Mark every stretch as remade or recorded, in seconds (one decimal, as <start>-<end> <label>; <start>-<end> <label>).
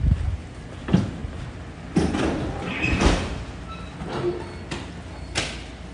0.0-5.9 recorded